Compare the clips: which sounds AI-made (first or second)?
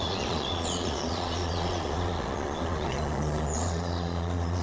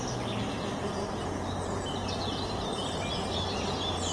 first